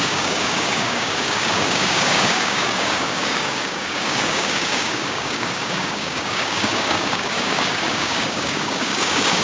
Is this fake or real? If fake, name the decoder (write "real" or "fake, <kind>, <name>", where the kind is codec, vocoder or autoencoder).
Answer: fake, codec, DAC